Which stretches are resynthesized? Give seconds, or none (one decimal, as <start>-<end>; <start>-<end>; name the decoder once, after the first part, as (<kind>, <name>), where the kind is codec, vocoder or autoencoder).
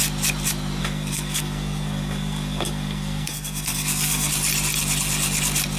0.8-4.3 (codec, SNAC)